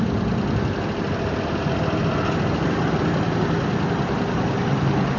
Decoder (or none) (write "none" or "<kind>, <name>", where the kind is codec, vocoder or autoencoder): none